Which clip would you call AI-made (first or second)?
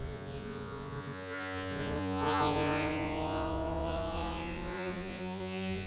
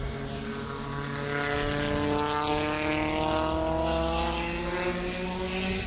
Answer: first